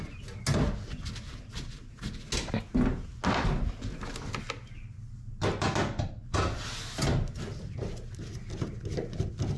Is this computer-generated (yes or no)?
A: no